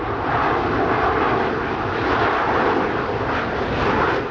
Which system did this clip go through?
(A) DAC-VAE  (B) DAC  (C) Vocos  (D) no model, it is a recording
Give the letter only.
D